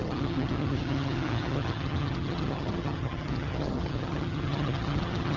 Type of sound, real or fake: fake